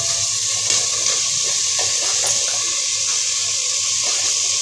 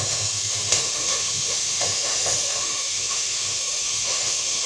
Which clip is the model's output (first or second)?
second